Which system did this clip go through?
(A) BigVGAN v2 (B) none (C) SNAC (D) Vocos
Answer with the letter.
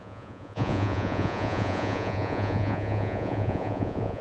D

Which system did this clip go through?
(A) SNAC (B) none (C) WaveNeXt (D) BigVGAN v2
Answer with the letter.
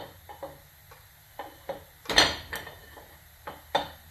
B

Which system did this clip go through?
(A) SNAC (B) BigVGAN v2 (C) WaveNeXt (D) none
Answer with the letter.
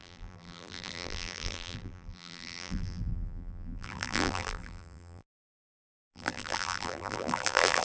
B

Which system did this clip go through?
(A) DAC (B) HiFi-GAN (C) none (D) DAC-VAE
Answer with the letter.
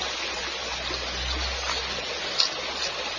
C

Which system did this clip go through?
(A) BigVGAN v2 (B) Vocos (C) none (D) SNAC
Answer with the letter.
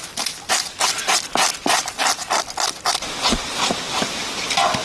C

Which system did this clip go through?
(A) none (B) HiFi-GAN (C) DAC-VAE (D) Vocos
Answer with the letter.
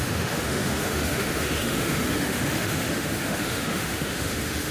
C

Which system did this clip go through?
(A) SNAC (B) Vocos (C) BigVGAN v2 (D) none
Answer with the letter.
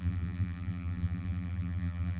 C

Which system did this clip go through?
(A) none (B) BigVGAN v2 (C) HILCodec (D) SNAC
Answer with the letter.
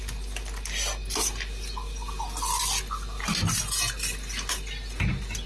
A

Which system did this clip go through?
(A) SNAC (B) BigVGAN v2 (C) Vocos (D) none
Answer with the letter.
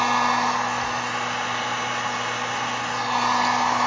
D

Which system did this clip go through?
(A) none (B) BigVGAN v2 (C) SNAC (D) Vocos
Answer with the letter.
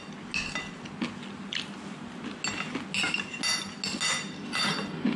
A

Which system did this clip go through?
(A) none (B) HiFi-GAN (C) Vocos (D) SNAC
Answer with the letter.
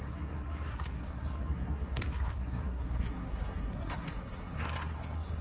D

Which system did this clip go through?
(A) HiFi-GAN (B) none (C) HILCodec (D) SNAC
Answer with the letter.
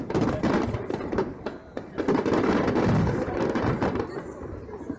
B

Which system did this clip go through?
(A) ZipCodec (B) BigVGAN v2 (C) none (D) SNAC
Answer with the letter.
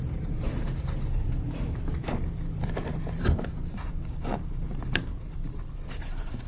B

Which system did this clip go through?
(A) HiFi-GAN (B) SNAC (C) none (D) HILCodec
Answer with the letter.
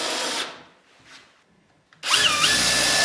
C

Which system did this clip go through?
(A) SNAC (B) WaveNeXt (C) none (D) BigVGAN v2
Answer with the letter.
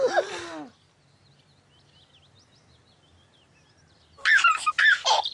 C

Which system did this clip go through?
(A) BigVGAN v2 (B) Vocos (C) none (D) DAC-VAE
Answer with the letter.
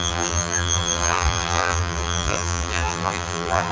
A